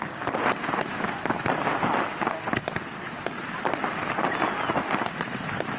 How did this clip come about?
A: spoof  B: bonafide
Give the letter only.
B